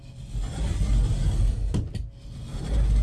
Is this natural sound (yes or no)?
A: yes